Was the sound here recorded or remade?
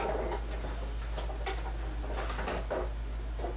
recorded